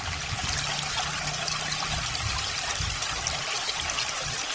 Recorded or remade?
recorded